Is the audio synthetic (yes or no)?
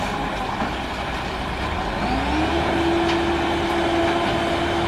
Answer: no